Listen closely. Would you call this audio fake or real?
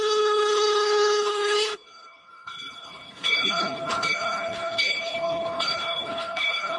fake